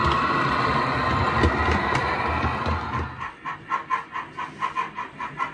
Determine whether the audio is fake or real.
real